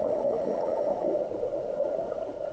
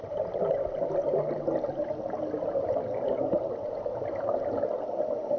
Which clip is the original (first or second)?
second